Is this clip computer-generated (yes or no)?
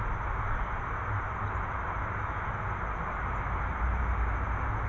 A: no